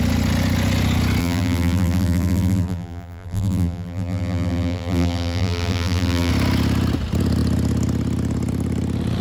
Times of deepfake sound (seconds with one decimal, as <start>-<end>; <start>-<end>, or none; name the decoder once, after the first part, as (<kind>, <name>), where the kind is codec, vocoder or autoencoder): 1.2-6.3 (vocoder, BigVGAN v2)